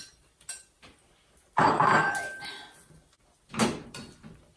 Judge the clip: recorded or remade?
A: recorded